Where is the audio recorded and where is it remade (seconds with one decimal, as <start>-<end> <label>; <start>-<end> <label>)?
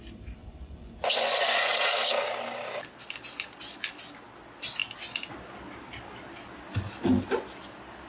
0.0-0.4 recorded; 0.4-1.7 remade; 1.7-8.1 recorded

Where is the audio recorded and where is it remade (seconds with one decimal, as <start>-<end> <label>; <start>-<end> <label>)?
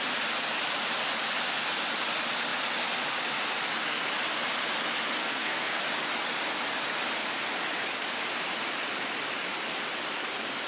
0.0-5.2 recorded; 5.2-5.8 remade; 5.8-10.7 recorded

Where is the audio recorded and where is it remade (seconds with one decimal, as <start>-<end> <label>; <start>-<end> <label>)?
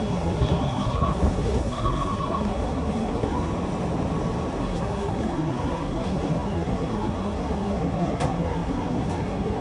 0.0-3.5 remade; 3.5-4.6 recorded; 4.6-9.6 remade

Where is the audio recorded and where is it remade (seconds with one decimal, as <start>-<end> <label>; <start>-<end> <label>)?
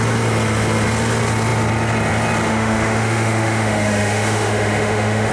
0.0-2.5 recorded; 2.5-5.3 remade